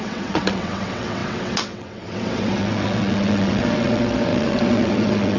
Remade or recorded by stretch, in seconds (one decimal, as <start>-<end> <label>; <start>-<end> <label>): 0.0-5.4 remade